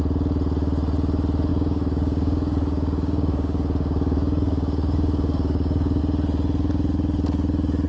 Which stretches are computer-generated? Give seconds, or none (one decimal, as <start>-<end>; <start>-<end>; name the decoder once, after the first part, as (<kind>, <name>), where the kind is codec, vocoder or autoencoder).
1.5-6.0 (codec, DAC)